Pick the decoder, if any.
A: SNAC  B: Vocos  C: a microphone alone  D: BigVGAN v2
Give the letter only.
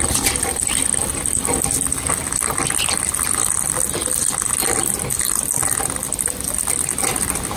C